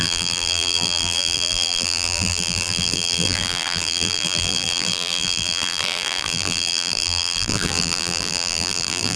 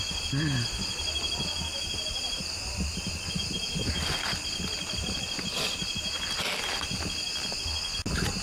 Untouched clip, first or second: second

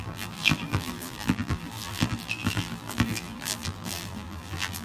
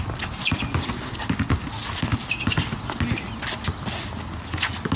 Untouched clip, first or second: second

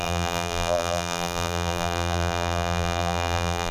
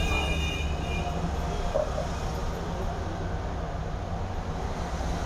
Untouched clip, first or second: second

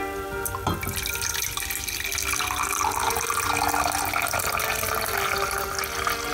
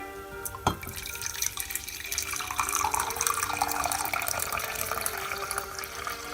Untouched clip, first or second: first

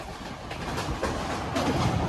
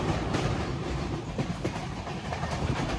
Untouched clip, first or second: first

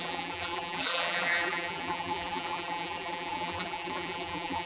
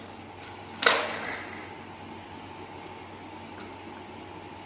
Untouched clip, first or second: second